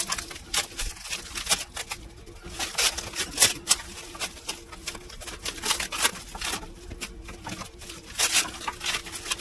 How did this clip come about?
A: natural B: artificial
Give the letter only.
A